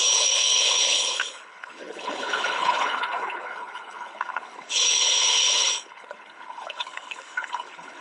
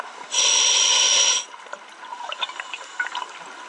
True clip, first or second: second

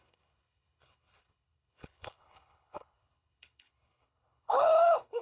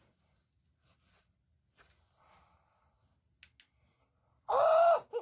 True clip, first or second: second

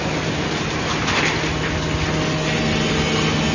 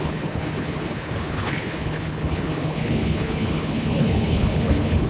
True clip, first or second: first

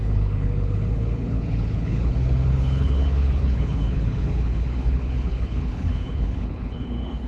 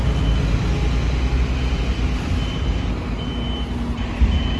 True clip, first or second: second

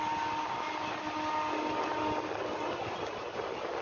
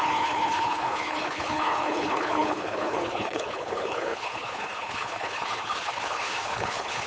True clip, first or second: first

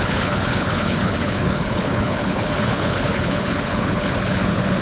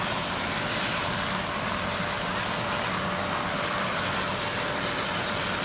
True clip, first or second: second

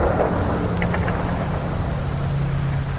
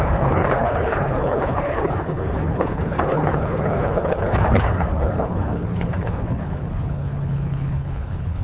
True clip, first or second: first